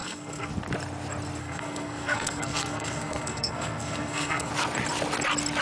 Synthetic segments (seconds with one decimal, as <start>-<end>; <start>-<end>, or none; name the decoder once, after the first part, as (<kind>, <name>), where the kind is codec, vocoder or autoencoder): 0.0-0.5 (codec, SNAC); 1.4-4.5